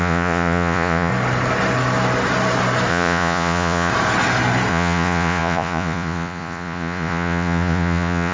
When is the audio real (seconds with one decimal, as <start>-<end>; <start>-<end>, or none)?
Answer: 1.1-2.9; 3.9-4.7